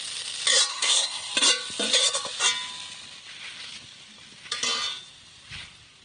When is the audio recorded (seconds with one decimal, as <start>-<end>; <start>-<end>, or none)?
0.0-0.7; 1.3-6.0